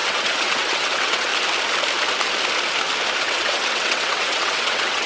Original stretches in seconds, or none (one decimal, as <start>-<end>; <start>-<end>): 1.3-3.2